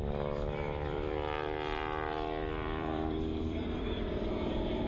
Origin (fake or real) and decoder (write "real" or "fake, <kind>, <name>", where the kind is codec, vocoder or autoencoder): fake, vocoder, BigVGAN v2